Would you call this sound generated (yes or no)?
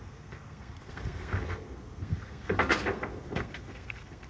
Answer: yes